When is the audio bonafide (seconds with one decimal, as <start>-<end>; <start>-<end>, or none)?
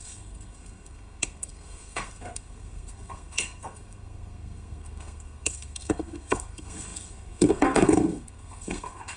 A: none